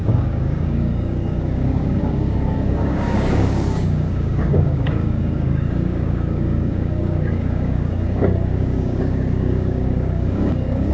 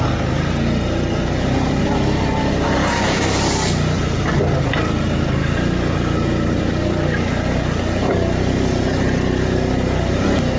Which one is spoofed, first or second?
first